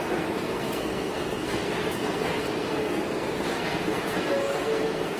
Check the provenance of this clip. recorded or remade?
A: remade